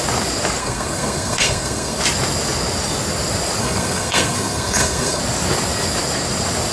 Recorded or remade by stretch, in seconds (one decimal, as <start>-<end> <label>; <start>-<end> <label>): 0.0-0.6 recorded; 0.6-2.0 remade; 2.0-3.6 recorded; 3.6-5.2 remade; 5.2-6.7 recorded